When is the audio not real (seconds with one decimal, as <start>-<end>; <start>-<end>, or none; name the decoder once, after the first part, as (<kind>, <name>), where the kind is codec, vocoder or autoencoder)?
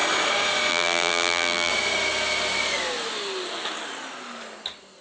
0.7-1.7 (vocoder, BigVGAN v2)